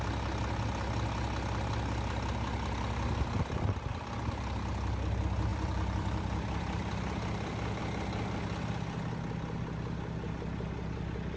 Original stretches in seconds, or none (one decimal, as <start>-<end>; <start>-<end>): 0.0-5.5; 7.8-11.4

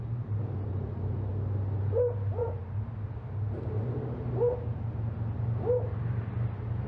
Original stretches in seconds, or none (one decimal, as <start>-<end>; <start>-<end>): 1.3-5.4

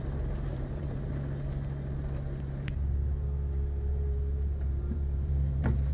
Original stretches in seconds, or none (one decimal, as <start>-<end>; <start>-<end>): 0.0-0.5; 1.1-3.9